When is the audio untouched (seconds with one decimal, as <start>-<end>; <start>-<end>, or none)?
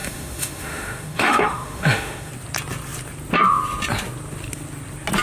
2.3-5.2